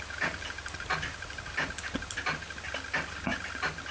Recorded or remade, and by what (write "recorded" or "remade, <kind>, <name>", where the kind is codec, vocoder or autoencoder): recorded